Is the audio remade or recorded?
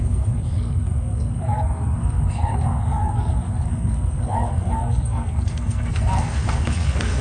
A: remade